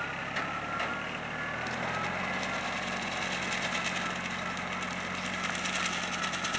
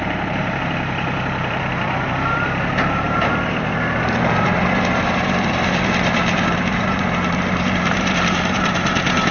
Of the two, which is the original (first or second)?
first